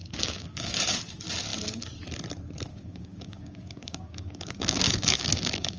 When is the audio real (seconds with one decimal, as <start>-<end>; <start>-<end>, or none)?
0.7-2.7